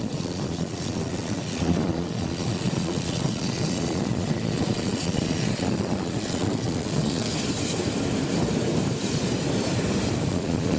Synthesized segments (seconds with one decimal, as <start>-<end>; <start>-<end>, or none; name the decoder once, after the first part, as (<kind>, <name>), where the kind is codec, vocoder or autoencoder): 0.0-7.3 (vocoder, Vocos); 10.3-10.8